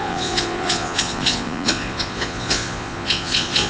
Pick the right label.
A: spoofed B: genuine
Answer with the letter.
A